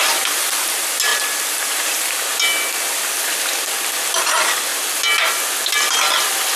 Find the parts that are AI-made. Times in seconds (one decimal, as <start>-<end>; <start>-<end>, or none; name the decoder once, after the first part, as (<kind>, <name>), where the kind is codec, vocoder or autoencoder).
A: 1.1-2.1 (vocoder, BigVGAN v2)